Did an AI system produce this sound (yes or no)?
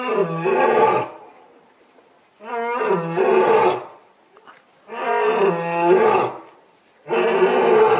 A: no